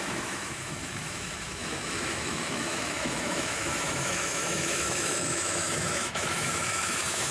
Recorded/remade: remade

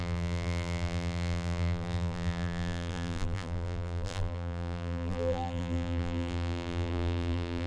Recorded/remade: remade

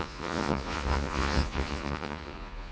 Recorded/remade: remade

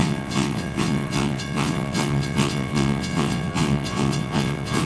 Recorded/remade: remade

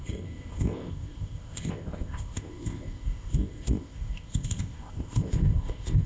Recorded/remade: remade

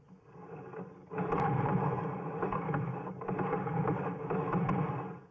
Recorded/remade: recorded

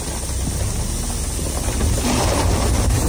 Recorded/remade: recorded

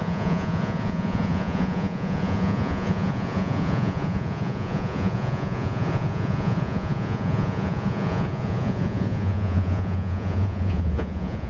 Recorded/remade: remade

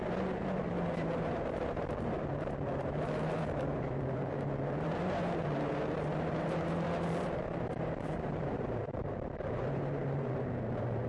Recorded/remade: remade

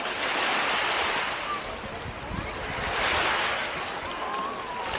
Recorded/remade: recorded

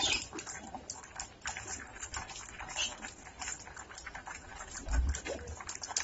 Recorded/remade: remade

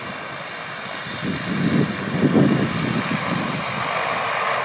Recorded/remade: recorded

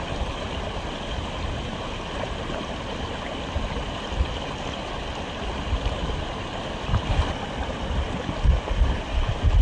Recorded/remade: recorded